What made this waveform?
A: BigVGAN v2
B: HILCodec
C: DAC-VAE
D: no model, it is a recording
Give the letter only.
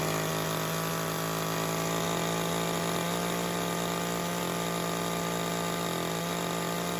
D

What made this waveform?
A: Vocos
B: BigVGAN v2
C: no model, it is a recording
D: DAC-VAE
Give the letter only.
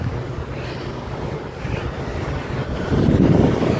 B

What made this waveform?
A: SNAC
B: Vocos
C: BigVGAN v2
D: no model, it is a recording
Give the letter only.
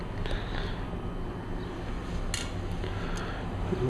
D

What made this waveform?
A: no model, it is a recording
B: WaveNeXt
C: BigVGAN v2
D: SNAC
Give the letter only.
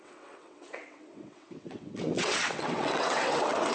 B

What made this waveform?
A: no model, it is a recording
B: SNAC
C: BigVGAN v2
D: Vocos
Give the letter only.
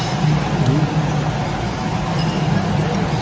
A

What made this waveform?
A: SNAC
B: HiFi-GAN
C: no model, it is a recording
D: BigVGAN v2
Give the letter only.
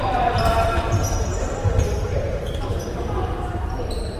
D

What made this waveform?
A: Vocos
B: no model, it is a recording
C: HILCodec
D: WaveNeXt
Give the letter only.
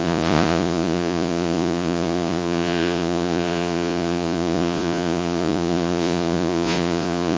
A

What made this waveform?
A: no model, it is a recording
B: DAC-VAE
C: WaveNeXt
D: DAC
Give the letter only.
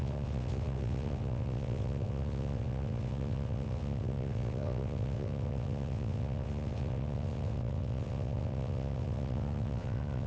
C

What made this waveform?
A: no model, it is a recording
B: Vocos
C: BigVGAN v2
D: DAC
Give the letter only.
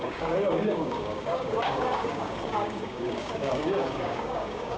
D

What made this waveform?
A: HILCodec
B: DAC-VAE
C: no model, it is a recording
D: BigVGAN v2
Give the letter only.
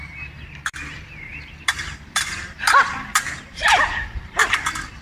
D